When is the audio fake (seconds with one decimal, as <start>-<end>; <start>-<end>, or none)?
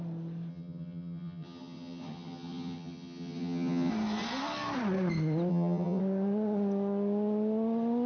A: 0.5-3.9; 5.5-6.0